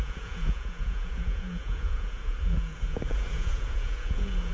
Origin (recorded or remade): remade